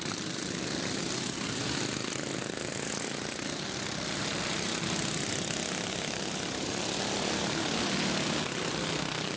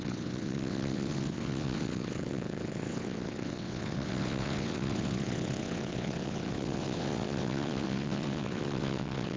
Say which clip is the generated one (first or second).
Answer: second